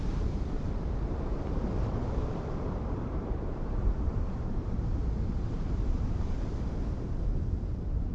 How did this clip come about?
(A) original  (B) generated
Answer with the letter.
B